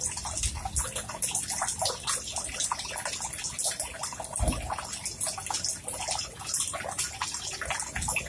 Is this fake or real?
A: real